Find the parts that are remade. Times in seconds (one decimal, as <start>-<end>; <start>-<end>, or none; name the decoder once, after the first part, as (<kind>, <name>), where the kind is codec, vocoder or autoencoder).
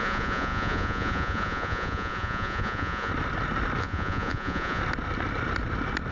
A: 0.0-3.1 (vocoder, Vocos); 3.8-4.8